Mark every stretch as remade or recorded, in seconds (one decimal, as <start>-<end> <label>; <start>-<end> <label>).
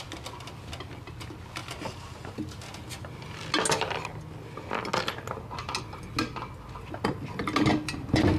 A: 0.0-8.4 recorded